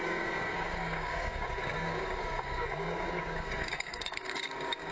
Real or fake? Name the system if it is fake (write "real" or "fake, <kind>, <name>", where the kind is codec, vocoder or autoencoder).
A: fake, codec, DAC